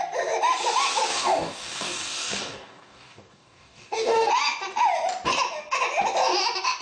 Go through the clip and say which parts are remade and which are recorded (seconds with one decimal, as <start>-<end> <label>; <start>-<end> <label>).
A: 0.0-1.1 recorded; 1.1-4.3 remade; 4.3-6.8 recorded